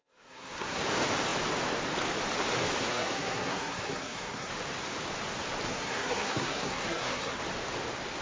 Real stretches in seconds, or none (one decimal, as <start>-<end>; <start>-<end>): 0.8-2.8; 4.5-5.7; 7.4-8.2